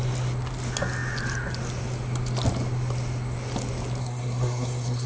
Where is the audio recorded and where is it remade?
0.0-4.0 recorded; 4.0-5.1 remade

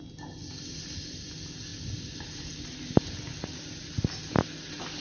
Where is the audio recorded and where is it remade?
0.0-5.0 recorded

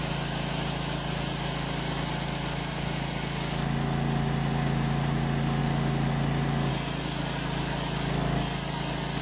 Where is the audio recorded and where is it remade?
0.0-9.2 recorded

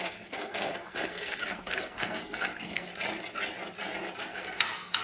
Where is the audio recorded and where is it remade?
0.0-2.9 remade; 2.9-4.2 recorded; 4.2-5.0 remade